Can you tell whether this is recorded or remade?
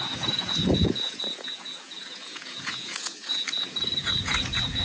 remade